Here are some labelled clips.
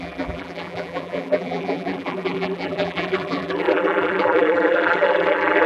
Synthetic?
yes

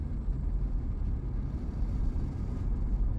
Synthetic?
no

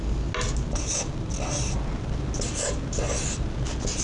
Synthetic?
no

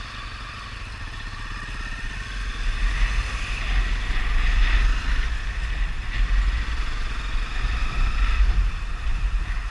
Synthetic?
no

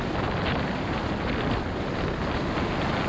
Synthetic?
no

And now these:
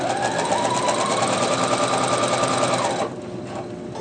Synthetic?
no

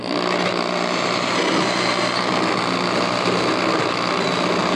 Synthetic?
no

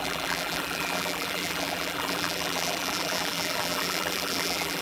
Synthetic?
yes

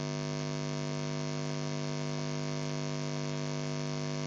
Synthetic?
no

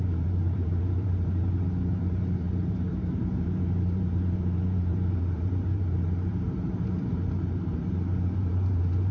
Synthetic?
yes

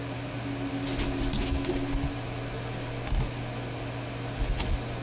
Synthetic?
no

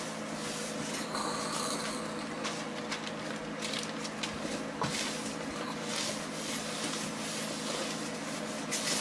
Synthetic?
no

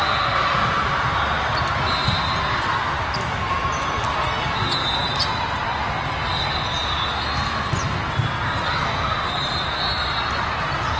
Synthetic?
no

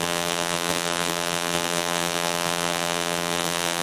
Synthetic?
yes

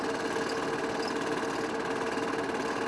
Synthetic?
no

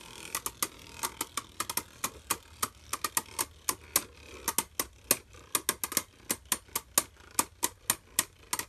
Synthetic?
no